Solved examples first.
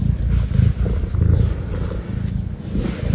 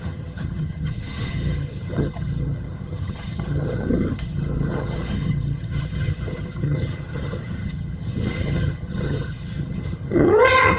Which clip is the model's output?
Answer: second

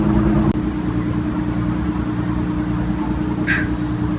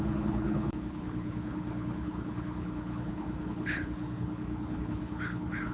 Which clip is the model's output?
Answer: second